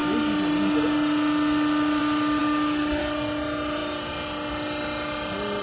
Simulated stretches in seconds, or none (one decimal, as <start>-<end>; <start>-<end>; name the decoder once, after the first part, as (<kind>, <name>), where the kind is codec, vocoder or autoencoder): none

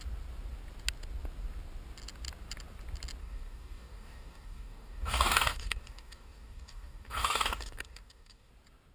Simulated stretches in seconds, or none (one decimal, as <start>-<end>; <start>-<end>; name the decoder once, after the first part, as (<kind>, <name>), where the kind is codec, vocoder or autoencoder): 3.2-8.5 (codec, DAC)

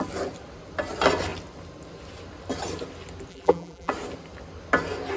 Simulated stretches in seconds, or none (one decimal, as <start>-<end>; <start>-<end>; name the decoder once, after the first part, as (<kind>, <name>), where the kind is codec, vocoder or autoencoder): 3.3-3.9 (vocoder, BigVGAN v2)

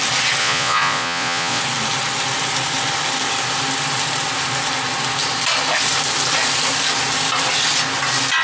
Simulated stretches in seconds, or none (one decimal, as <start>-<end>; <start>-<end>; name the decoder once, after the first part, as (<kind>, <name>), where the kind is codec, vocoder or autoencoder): 0.4-1.6 (vocoder, Vocos)

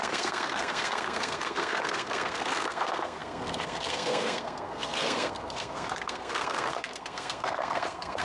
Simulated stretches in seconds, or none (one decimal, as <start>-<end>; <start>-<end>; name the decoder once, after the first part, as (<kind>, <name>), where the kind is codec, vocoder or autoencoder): 0.0-8.2 (codec, SNAC)